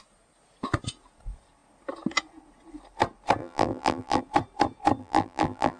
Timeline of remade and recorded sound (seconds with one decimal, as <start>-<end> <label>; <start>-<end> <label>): 0.0-3.4 recorded; 3.4-4.2 remade; 4.2-5.0 recorded; 5.0-5.8 remade